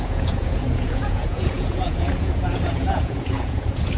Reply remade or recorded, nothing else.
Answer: remade